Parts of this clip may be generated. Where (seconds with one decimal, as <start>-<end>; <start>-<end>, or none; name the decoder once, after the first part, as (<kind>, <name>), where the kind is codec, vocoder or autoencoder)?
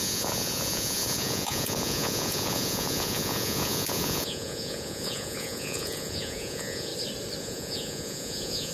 0.0-6.9 (vocoder, Vocos); 7.4-8.7